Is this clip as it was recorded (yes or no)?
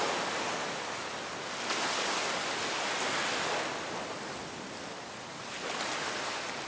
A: yes